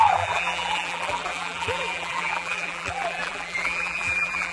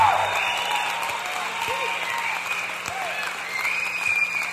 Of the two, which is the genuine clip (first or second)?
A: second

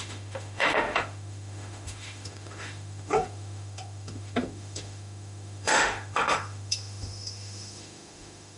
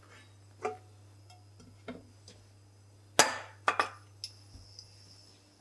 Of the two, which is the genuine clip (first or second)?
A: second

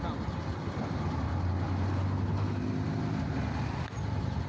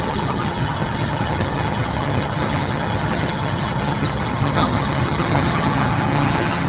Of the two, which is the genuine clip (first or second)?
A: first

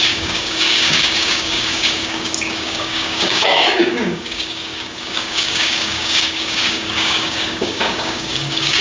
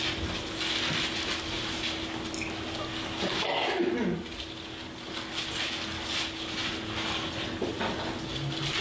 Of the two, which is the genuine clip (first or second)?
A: second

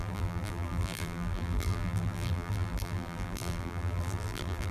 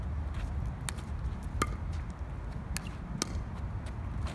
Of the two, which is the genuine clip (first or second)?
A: second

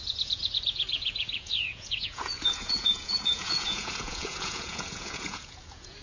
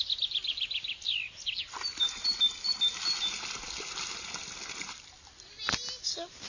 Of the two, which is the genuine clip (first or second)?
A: second